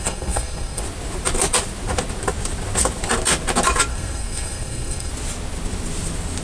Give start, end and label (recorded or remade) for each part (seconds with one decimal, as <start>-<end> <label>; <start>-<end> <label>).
0.0-0.8 remade; 0.8-3.9 recorded; 3.9-5.1 remade; 5.1-6.4 recorded